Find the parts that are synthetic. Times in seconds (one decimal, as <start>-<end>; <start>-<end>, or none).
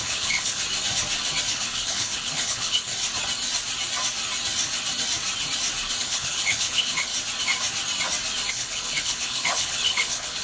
0.0-0.6; 1.5-2.9; 6.0-7.1; 8.5-10.4